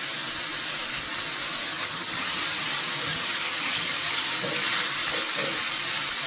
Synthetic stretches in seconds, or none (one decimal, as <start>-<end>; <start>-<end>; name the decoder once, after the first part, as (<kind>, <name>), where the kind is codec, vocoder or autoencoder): 1.6-2.6 (vocoder, HiFi-GAN); 3.1-4.3